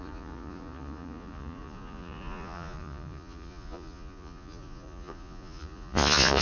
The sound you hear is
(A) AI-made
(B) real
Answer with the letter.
A